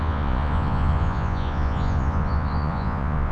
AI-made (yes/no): yes